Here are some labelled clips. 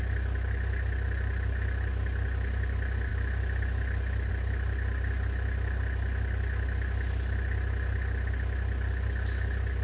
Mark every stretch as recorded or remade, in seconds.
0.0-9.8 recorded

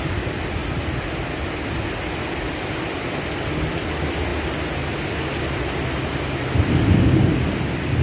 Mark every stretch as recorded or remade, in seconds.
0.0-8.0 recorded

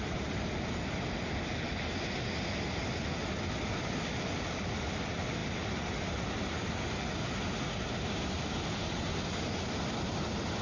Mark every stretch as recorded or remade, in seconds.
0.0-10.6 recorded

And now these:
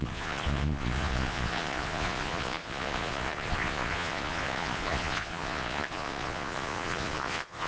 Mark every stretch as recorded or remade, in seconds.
0.0-7.7 remade

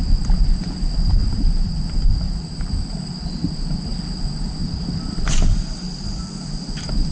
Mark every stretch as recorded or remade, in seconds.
0.0-7.1 recorded

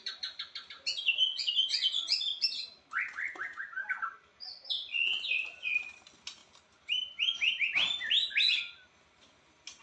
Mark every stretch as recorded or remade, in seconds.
0.0-9.8 recorded

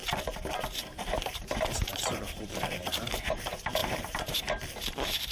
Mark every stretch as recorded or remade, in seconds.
0.0-0.5 recorded; 0.5-5.3 remade